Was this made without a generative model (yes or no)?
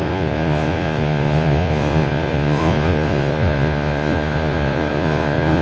no